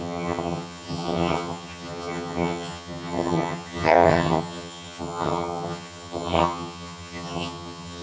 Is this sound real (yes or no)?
no